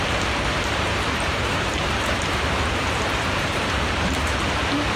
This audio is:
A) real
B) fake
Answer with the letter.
B